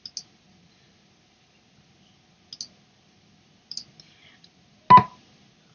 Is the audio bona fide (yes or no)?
yes